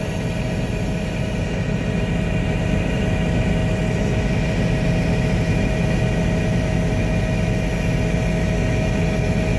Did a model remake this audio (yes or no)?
no